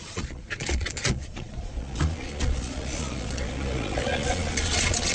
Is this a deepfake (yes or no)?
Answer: yes